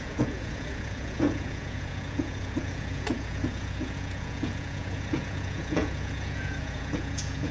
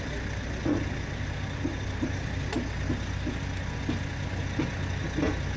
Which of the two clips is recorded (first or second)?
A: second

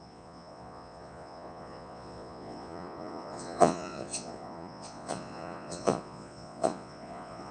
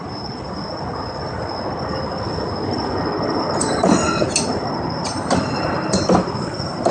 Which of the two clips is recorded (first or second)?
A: second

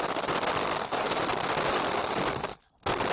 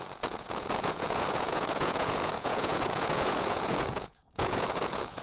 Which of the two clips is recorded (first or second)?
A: first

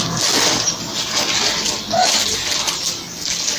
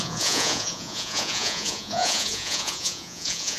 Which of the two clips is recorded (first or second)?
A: first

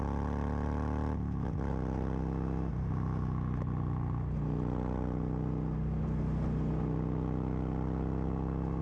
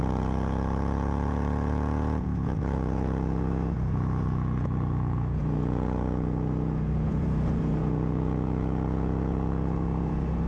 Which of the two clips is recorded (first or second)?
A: first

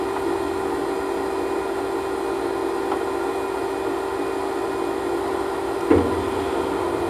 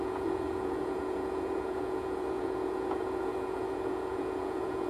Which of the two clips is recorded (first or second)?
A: first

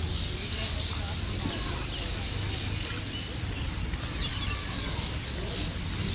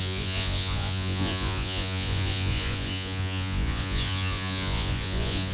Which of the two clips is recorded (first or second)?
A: first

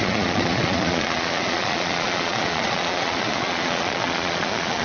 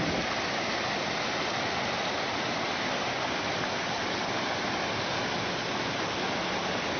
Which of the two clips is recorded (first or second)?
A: second